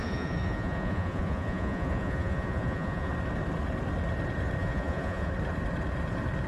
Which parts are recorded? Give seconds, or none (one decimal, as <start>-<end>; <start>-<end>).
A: 3.1-4.6; 5.3-6.5